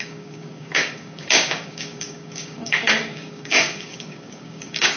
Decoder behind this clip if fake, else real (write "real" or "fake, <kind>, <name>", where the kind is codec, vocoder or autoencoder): fake, codec, DAC